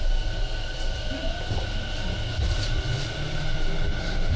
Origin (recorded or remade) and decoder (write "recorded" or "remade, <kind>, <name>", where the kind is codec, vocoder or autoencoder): recorded